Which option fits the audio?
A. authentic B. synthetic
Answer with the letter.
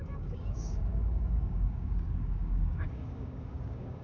B